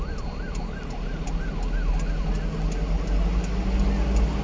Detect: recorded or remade recorded